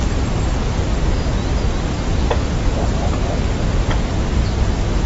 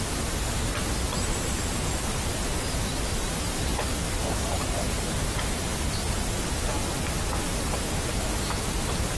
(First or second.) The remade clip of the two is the second